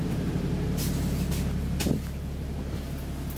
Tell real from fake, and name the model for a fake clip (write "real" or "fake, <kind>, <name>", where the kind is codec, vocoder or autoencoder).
real